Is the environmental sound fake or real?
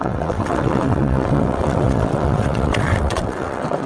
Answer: fake